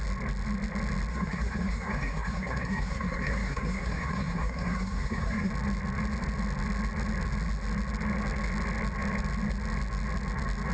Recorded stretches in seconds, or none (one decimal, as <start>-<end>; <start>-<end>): 0.0-1.1; 5.5-10.7